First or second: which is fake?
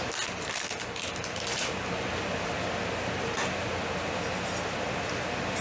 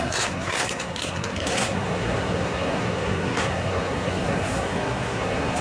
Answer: second